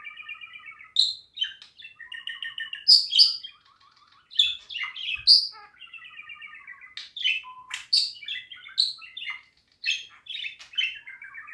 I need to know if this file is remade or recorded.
recorded